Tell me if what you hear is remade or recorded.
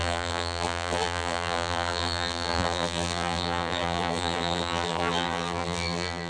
remade